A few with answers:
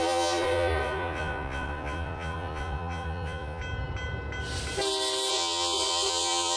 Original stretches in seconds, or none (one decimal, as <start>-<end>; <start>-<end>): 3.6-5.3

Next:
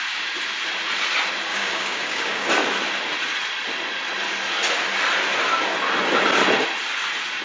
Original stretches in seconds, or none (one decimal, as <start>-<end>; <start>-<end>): 0.0-1.5; 2.5-7.4

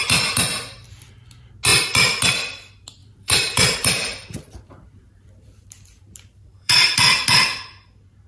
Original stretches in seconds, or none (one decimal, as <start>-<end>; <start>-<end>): 0.0-3.0; 6.7-8.3

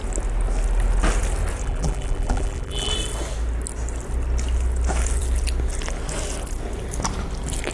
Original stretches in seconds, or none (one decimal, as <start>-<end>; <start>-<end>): 0.0-1.6; 2.9-7.7

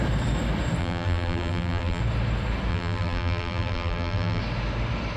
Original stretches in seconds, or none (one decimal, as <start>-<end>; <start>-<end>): 0.0-0.8; 2.0-2.7; 4.4-5.2

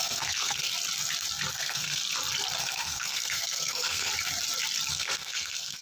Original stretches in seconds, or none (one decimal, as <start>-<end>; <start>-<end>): 0.7-1.5; 2.0-2.6; 4.1-4.9

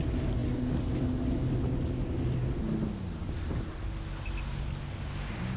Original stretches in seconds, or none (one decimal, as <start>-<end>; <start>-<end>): 0.0-5.6